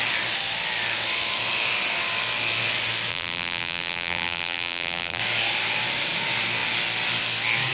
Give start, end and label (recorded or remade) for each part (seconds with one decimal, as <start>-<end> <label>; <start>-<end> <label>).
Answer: 0.0-3.1 recorded; 3.1-5.2 remade; 5.2-7.7 recorded

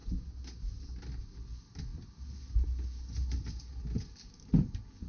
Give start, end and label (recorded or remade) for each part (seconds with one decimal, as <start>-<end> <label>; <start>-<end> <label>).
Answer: 0.0-5.1 recorded

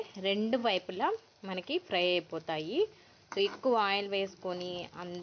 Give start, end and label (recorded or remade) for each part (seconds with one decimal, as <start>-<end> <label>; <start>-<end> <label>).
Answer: 0.0-5.2 recorded

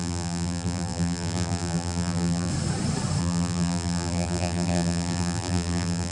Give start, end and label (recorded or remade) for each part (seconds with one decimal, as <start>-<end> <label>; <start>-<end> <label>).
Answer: 0.0-2.5 remade; 2.5-3.2 recorded; 3.2-6.1 remade

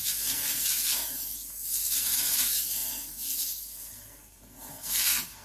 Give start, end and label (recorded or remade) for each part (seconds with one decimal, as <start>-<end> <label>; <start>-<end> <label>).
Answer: 0.0-5.4 remade

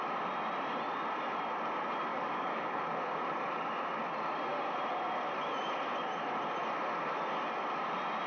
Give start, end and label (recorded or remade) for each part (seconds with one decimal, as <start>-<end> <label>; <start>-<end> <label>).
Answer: 0.0-2.1 recorded; 2.1-3.2 remade; 3.2-8.3 recorded

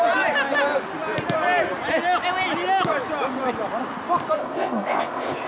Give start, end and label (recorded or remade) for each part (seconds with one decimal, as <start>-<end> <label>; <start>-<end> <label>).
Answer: 0.0-4.4 recorded; 4.4-5.5 remade

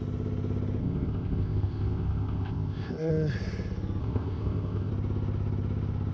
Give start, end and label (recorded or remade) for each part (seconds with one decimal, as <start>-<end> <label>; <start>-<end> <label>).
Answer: 0.0-0.8 recorded; 0.8-3.1 remade; 3.1-4.0 recorded; 4.0-4.9 remade; 4.9-6.1 recorded